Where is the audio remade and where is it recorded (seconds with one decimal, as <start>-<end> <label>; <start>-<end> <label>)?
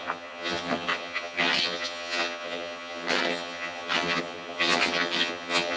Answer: 0.0-5.8 remade